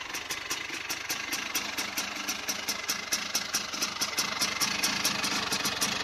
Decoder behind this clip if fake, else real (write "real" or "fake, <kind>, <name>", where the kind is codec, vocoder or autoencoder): real